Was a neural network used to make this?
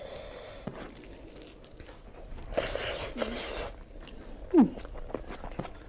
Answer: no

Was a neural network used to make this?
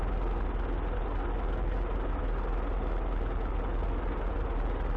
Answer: no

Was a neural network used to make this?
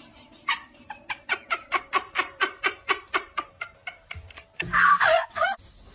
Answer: no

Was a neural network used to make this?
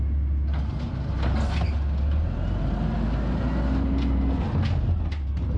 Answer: no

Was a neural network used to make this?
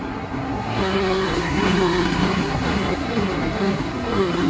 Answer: yes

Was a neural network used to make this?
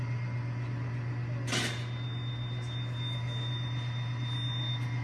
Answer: no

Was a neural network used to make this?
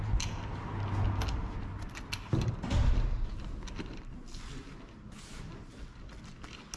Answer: no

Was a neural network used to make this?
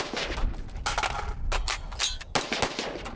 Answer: no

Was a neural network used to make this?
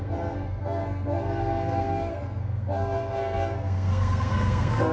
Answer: yes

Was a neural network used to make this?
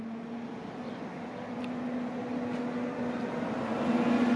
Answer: no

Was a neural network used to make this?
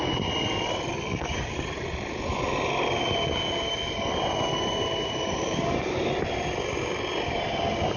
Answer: no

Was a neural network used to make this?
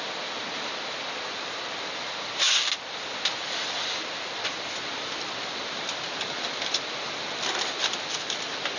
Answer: no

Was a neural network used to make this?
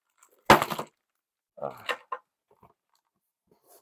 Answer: no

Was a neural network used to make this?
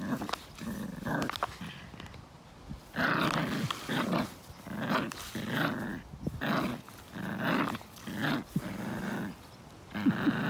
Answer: no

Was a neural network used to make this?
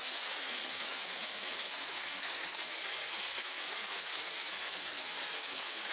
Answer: yes